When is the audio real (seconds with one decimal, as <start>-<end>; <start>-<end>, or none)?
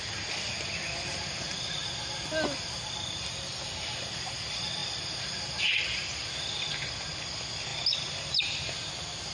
0.0-9.3